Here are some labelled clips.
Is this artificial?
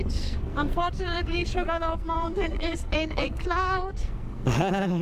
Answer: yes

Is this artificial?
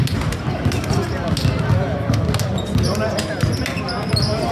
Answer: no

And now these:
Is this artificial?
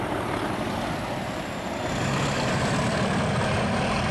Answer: no